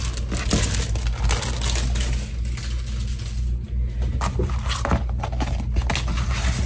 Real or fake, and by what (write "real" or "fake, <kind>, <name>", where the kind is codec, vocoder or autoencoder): real